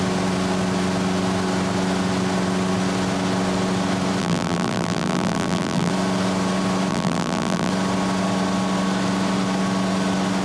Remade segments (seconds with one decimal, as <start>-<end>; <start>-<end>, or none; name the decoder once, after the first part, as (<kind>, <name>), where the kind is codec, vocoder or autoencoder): 4.2-5.9 (vocoder, BigVGAN v2); 6.9-7.7